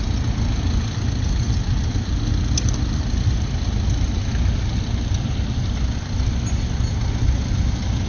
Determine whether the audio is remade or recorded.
recorded